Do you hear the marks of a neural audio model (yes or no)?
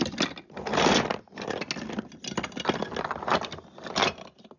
no